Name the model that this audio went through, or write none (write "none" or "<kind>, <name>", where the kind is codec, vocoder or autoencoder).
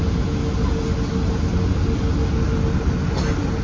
none